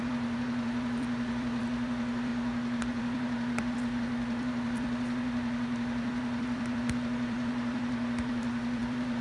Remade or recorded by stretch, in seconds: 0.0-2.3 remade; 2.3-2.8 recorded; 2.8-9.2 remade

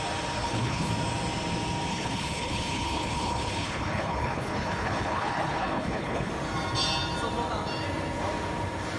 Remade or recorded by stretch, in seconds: 0.0-0.4 recorded; 0.4-0.9 remade; 0.9-1.9 recorded; 1.9-6.3 remade; 6.3-9.0 recorded

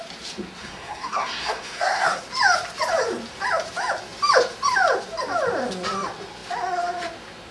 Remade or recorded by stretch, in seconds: 0.0-0.6 recorded; 0.6-2.2 remade; 2.2-7.5 recorded